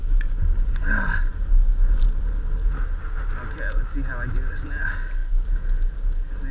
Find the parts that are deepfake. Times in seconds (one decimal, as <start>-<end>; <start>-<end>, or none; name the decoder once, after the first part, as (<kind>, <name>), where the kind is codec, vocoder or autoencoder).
none